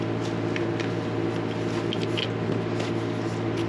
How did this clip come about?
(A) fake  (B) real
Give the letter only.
B